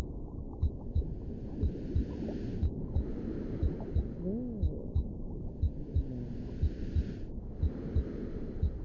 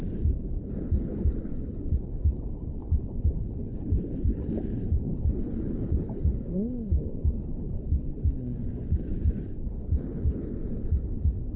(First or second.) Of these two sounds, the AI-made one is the second